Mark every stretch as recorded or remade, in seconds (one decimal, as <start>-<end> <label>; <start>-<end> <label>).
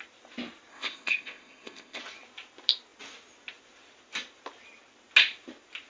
0.0-0.7 recorded; 0.7-2.0 remade; 2.0-5.9 recorded